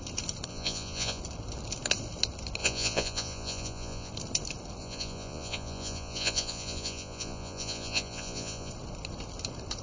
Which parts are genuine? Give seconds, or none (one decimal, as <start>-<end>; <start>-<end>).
0.0-0.5; 1.2-2.6; 4.1-4.8; 8.7-9.8